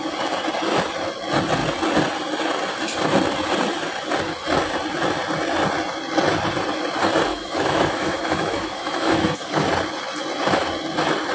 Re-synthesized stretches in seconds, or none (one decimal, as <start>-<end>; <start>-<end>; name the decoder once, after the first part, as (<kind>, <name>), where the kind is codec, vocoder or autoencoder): 7.3-9.7 (autoencoder, DAC-VAE)